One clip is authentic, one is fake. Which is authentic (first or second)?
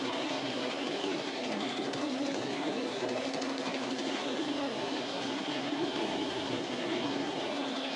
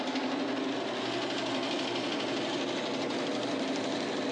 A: second